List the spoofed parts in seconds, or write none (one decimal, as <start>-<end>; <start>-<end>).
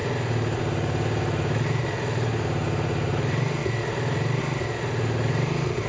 0.6-3.6; 4.4-5.9